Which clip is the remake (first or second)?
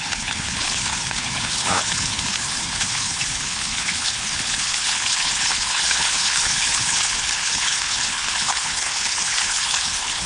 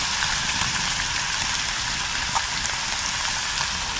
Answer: first